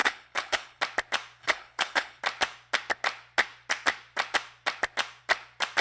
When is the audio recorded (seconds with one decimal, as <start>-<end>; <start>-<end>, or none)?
0.8-1.4; 2.2-5.8